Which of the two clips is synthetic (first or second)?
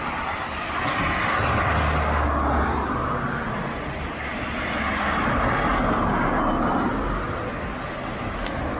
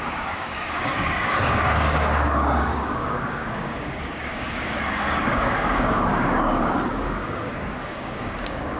second